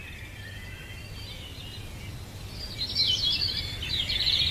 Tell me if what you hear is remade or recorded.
recorded